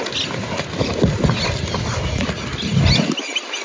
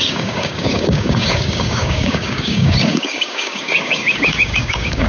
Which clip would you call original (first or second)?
first